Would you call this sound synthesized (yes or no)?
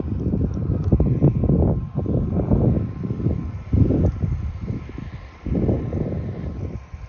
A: no